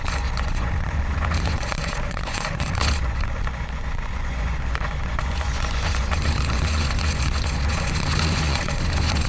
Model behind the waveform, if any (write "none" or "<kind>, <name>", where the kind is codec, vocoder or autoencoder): vocoder, Vocos